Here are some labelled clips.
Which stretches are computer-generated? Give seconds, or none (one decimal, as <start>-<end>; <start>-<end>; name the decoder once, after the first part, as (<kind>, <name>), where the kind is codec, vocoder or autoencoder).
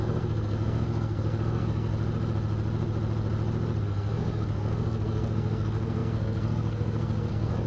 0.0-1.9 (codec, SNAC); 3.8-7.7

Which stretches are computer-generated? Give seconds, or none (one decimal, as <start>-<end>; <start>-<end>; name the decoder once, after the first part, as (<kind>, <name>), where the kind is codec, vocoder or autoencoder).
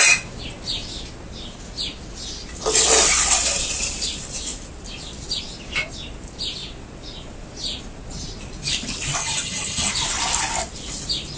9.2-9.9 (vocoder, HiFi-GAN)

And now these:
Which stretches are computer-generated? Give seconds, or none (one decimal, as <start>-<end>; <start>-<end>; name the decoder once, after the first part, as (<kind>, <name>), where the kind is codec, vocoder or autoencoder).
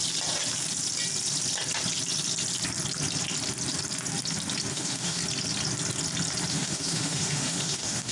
4.7-5.2 (autoencoder, DAC-VAE); 6.5-8.1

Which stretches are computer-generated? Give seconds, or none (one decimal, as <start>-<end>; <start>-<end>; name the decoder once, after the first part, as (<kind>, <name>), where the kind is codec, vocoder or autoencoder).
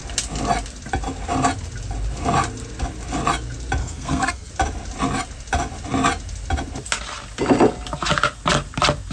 3.8-4.5 (codec, SNAC)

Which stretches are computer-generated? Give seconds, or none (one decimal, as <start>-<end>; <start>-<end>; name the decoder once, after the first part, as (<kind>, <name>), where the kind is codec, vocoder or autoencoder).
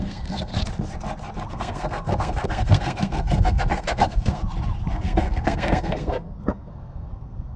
0.0-0.5 (codec, SNAC); 1.5-4.4; 4.9-7.6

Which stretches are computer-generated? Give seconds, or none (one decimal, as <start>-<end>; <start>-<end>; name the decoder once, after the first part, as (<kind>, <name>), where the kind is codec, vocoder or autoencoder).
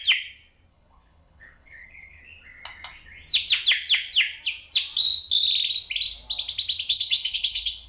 0.7-2.2 (codec, HILCodec); 6.9-7.9